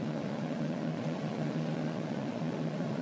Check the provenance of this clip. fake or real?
fake